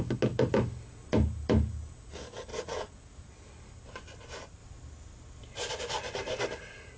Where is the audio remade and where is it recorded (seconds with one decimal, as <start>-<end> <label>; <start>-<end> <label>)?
0.0-2.5 recorded; 2.5-3.3 remade; 3.3-7.0 recorded